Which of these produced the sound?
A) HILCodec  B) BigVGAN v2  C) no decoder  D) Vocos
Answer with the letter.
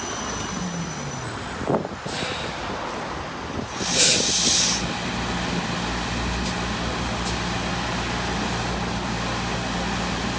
C